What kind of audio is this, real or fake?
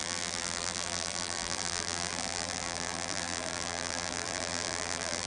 fake